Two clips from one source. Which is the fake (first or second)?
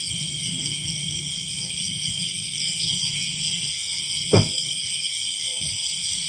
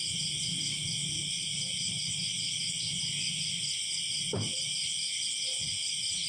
first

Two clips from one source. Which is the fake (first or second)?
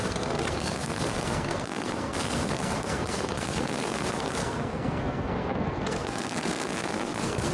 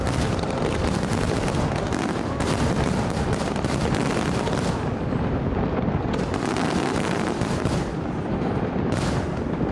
first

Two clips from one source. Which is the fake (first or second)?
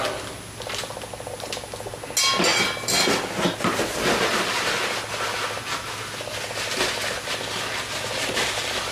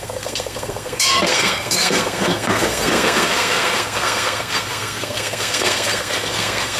second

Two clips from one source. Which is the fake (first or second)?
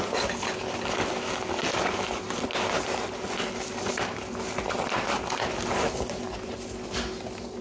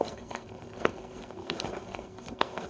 second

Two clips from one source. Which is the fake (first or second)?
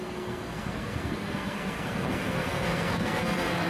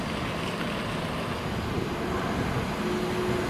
first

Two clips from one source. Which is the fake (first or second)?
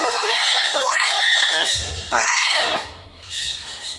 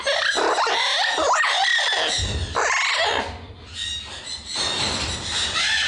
first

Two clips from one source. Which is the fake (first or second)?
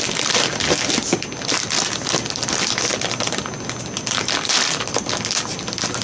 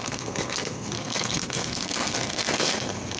second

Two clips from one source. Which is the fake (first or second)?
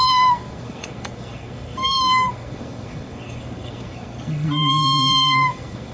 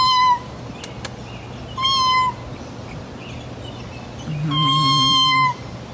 first